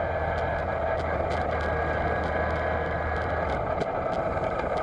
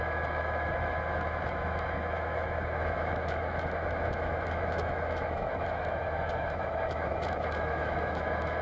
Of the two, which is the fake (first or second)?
second